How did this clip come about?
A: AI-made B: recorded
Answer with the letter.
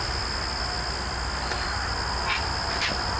B